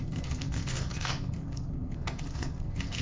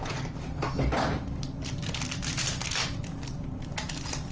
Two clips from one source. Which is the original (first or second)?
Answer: second